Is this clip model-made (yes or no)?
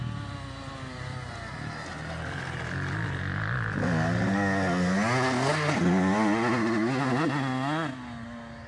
no